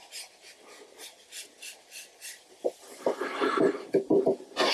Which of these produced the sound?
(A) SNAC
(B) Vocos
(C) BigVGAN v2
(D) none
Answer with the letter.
C